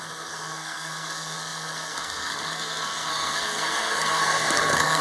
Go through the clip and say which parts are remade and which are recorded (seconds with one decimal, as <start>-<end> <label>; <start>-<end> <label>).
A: 0.0-5.0 remade